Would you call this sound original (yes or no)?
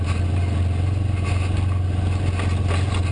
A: yes